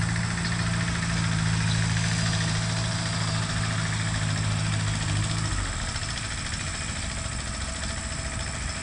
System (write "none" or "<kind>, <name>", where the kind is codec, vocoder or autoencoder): none